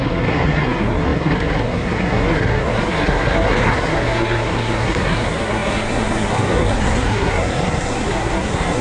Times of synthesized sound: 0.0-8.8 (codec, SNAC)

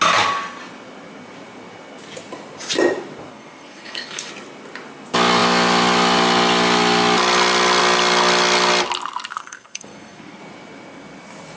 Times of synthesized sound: 3.3-4.3 (codec, SNAC); 9.3-10.4

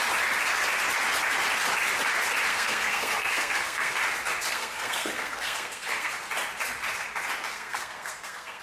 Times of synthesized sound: 2.5-3.9 (codec, SNAC); 4.5-6.1; 7.5-8.6